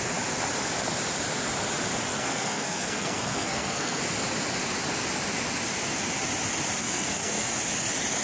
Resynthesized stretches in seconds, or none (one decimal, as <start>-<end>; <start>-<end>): 2.1-4.0; 6.8-7.5